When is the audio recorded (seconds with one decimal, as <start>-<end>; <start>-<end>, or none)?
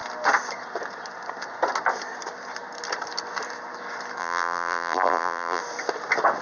0.0-4.2; 5.6-6.4